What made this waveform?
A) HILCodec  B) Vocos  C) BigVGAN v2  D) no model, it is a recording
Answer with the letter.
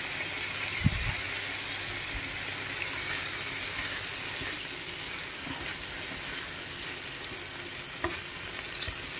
D